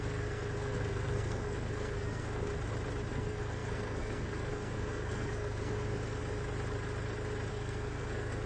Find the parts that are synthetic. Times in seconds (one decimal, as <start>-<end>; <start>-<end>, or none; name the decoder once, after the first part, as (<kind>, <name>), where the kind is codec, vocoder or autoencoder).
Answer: 0.0-2.5 (codec, SNAC); 3.1-6.2; 7.5-8.5